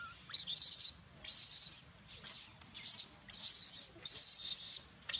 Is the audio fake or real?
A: real